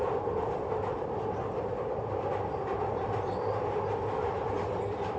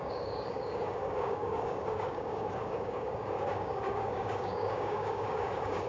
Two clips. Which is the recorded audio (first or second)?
first